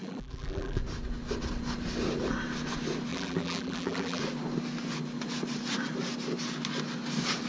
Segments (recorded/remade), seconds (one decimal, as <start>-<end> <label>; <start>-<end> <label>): 0.0-0.8 remade; 0.8-3.1 recorded; 3.1-4.2 remade; 4.2-7.5 recorded